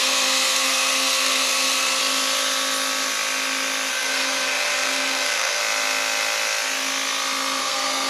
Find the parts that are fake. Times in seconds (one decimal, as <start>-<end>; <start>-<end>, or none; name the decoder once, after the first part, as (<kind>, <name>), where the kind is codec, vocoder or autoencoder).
0.0-2.0 (codec, SNAC); 3.9-5.6; 7.6-8.1